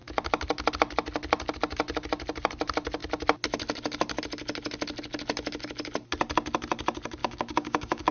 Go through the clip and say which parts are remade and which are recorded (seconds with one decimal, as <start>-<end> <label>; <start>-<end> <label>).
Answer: 0.0-7.2 recorded; 7.2-8.1 remade